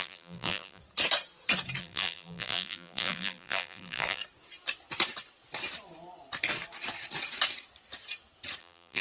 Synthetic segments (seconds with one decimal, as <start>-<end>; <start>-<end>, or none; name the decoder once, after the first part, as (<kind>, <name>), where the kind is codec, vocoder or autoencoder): 0.0-0.8 (vocoder, BigVGAN v2); 1.8-4.2; 8.6-9.0